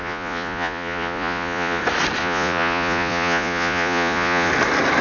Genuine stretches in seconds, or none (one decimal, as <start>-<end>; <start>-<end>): 1.8-2.2; 4.5-5.0